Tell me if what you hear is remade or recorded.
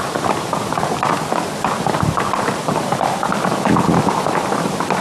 recorded